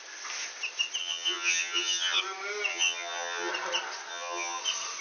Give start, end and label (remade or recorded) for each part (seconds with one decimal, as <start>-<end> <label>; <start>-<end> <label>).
0.0-1.0 recorded; 1.0-2.2 remade; 2.2-2.7 recorded; 2.7-3.5 remade; 3.5-4.1 recorded; 4.1-4.6 remade; 4.6-5.0 recorded